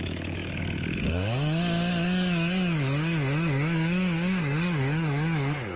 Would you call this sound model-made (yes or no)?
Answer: yes